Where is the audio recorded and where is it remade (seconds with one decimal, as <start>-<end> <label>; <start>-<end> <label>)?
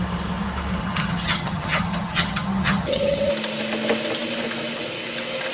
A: 0.0-0.8 recorded; 0.8-3.3 remade; 3.3-5.5 recorded